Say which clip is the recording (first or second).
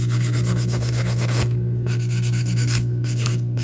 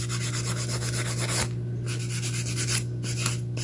second